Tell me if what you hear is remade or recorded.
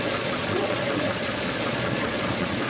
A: remade